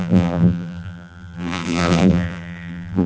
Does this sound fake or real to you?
fake